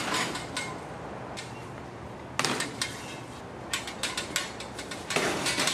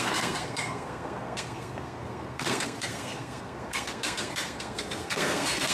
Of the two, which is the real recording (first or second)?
first